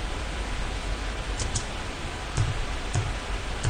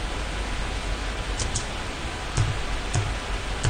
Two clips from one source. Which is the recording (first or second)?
second